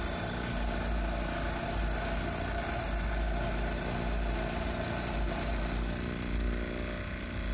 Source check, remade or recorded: recorded